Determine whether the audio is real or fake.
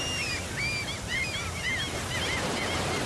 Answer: real